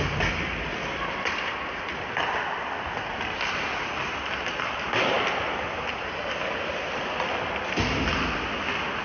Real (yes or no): yes